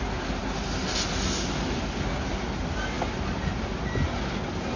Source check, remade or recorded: recorded